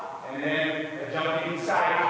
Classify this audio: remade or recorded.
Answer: remade